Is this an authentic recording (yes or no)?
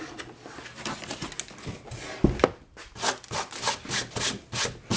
yes